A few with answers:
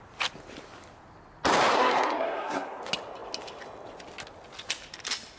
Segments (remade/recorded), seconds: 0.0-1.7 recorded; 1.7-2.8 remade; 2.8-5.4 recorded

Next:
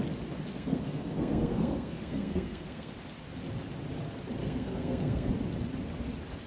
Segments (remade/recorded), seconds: 0.0-0.5 recorded; 0.5-2.9 remade; 2.9-4.4 recorded; 4.4-5.3 remade; 5.3-6.5 recorded

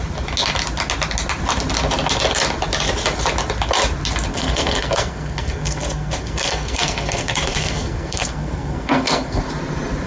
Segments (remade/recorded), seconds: 0.0-4.3 recorded; 4.3-9.4 remade; 9.4-10.1 recorded

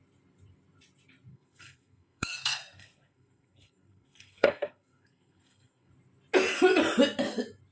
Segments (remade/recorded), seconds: 0.0-1.3 recorded; 1.3-5.9 remade; 5.9-7.7 recorded

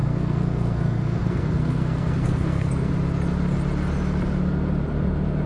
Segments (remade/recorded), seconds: 0.0-2.9 remade; 2.9-5.5 recorded

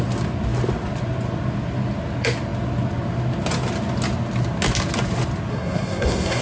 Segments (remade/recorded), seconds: 0.0-5.5 recorded; 5.5-6.4 remade

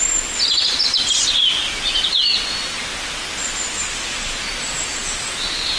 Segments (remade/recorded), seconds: 0.0-5.8 recorded